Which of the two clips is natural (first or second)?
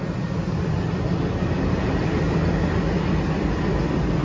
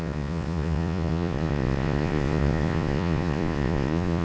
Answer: first